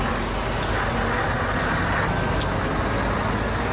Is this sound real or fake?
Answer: real